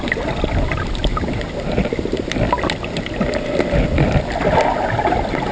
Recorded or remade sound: recorded